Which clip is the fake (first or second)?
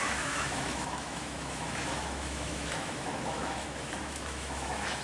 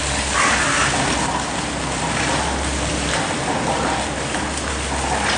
first